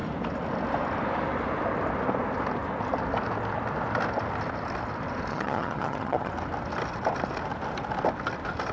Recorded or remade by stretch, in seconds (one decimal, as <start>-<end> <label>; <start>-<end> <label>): 0.0-5.3 recorded; 5.3-6.3 remade; 6.3-8.7 recorded